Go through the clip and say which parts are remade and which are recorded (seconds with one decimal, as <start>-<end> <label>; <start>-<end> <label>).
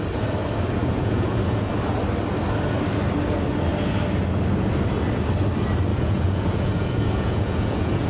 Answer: 0.0-0.8 recorded; 0.8-1.7 remade; 1.7-5.9 recorded; 5.9-8.1 remade